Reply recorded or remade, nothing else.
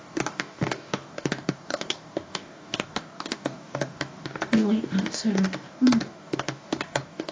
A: remade